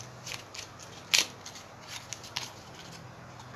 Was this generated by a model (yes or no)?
no